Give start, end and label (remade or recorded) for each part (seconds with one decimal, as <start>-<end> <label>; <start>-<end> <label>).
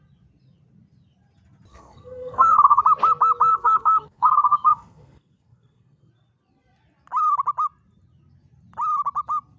0.0-1.7 recorded; 1.7-2.8 remade; 2.8-3.5 recorded; 3.5-6.1 remade; 6.1-9.6 recorded